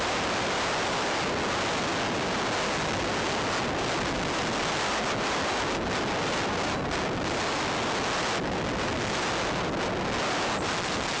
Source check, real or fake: real